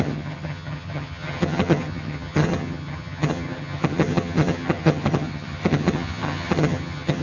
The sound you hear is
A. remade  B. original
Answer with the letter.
A